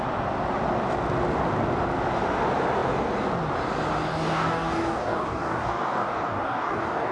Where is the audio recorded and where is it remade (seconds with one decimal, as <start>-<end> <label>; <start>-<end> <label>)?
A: 0.0-4.1 recorded; 4.1-7.1 remade